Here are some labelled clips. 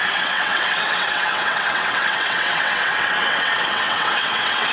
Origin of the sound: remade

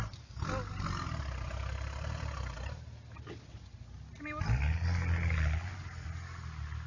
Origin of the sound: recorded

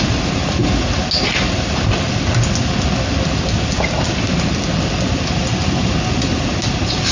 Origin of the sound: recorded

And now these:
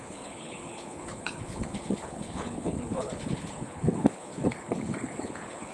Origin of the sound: remade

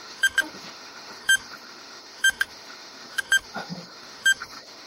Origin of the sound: remade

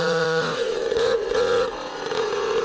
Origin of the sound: remade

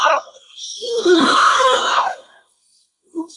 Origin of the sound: remade